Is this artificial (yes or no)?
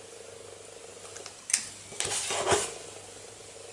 no